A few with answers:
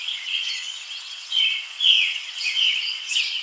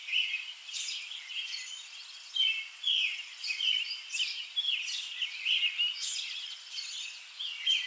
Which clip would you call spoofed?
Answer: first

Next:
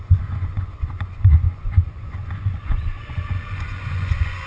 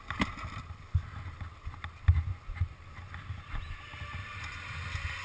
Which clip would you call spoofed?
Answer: first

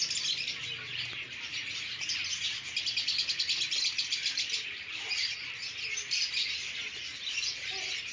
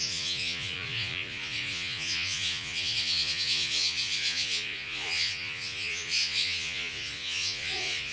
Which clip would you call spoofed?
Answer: second